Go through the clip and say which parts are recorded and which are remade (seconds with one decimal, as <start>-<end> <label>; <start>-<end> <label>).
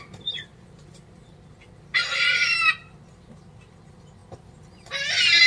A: 0.0-5.5 recorded